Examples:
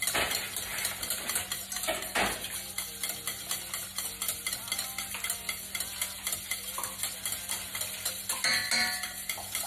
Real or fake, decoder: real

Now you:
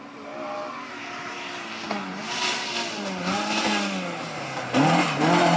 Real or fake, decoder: real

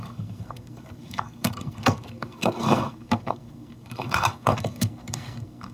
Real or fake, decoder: fake, codec, SNAC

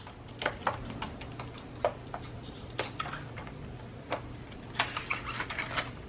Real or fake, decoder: real